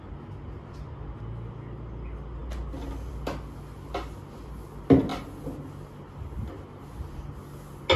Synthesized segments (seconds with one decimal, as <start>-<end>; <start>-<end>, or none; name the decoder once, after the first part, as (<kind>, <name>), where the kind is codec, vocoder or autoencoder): none